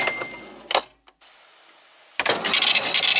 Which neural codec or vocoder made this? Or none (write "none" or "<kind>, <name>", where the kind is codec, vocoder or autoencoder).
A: none